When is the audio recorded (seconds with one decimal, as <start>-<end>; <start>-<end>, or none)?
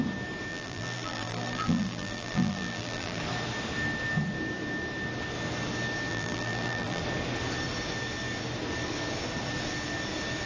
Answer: 0.0-0.5; 3.2-6.1; 7.0-10.5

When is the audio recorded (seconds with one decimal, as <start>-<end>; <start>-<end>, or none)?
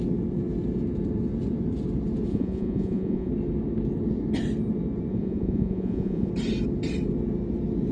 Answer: 0.0-2.3; 3.3-5.1; 6.3-7.9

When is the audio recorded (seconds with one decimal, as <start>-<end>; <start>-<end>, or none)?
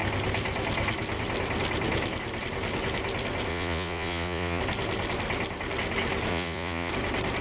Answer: 0.0-3.5; 4.6-6.3; 6.9-7.4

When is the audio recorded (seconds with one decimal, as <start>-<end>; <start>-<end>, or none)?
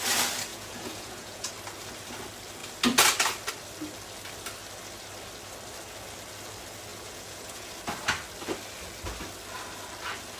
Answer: 0.0-0.5; 1.5-6.9; 7.7-10.4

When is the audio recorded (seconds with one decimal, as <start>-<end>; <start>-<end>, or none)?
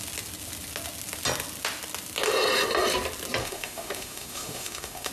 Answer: 0.0-3.4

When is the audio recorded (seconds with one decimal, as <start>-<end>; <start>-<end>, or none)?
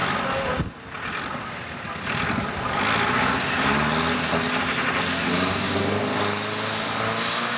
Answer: 0.0-5.3; 6.0-7.6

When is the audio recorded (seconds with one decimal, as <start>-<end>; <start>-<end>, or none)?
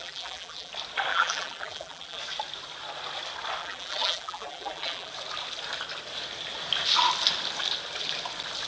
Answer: 0.7-1.1; 2.2-3.6; 5.1-8.7